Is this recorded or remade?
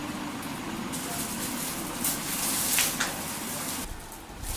recorded